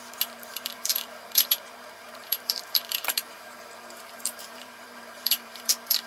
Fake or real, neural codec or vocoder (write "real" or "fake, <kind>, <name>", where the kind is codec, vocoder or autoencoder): fake, vocoder, BigVGAN v2